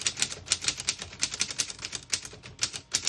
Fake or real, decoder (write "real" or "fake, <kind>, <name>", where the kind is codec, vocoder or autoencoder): real